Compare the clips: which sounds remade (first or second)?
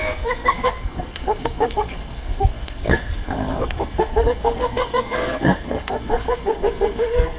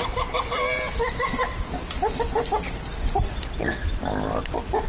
first